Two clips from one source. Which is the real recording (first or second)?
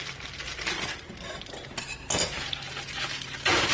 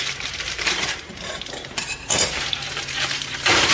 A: first